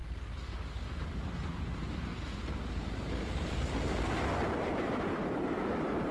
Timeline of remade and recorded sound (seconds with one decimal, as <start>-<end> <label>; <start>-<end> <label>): 0.0-1.0 recorded; 1.0-2.1 remade; 2.1-4.5 recorded; 4.5-6.1 remade

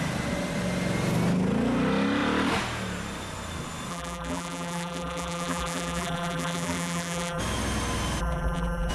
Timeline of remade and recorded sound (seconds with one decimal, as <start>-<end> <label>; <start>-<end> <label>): 0.0-3.9 recorded; 3.9-7.4 remade; 7.4-8.2 recorded; 8.2-8.9 remade